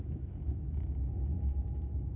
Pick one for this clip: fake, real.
fake